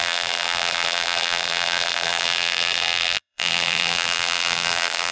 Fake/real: fake